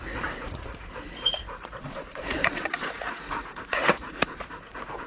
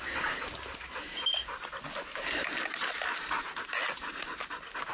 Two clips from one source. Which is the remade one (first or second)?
first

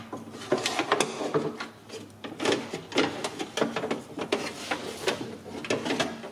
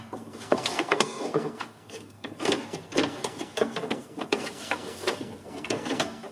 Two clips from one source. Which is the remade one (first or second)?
second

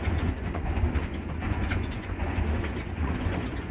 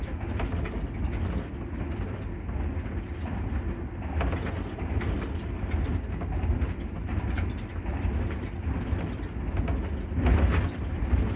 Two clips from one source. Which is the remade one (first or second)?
first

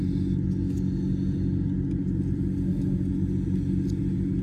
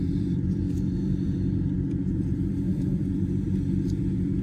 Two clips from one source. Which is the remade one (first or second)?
second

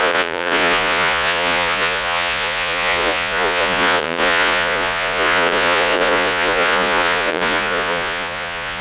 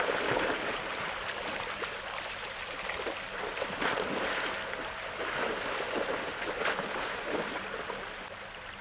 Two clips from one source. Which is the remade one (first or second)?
first